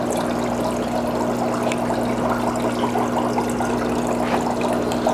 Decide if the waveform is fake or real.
real